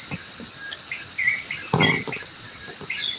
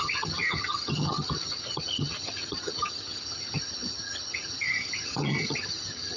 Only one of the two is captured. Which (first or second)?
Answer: first